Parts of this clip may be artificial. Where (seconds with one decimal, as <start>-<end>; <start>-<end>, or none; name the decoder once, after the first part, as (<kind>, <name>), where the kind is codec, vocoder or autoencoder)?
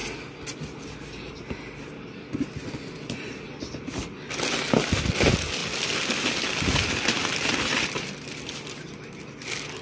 none